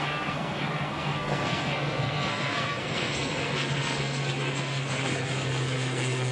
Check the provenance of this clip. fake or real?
fake